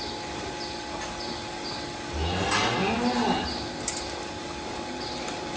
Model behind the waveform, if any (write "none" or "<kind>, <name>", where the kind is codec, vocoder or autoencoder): none